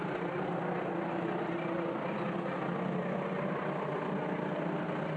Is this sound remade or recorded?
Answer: recorded